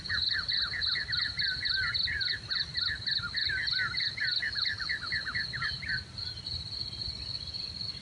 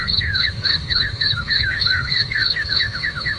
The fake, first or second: second